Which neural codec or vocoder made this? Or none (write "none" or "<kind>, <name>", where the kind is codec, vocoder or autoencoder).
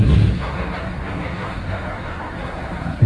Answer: codec, SNAC